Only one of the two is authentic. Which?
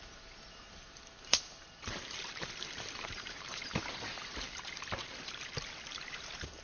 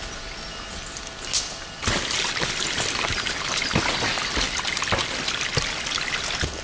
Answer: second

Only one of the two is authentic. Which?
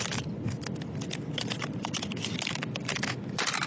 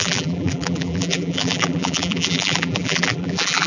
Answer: first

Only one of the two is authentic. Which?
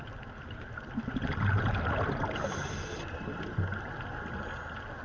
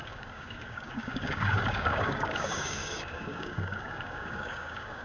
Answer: first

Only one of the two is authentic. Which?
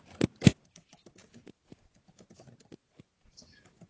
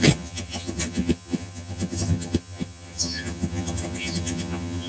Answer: first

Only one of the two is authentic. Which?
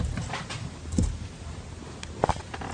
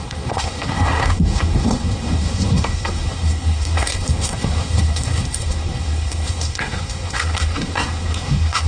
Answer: first